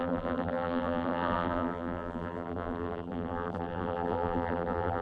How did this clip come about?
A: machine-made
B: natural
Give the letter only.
A